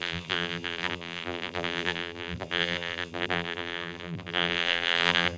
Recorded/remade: remade